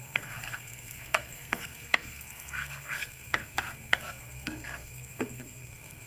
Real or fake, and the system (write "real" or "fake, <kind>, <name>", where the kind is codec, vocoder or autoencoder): fake, codec, SNAC